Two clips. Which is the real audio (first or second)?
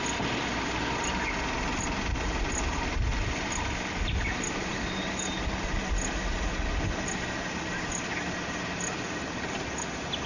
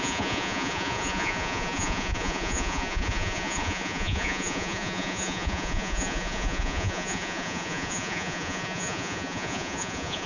first